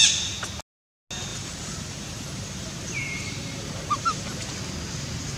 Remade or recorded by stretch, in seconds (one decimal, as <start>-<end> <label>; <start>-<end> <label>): 0.0-1.3 recorded; 1.3-4.5 remade; 4.5-5.4 recorded